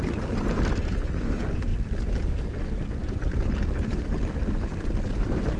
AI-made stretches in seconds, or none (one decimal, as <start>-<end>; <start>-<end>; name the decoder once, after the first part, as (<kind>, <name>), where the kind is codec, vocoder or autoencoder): none